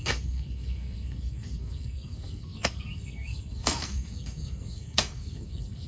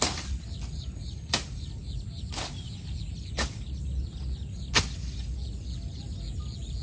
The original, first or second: second